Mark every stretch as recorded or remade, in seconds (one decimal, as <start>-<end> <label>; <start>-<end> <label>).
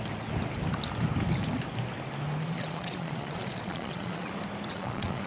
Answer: 0.0-2.4 recorded; 2.4-4.3 remade; 4.3-4.7 recorded; 4.7-5.3 remade